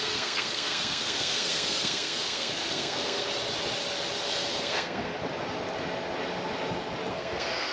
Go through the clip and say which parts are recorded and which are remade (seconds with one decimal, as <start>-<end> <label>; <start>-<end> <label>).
0.0-3.3 remade; 3.3-4.6 recorded; 4.6-5.1 remade; 5.1-7.1 recorded; 7.1-7.7 remade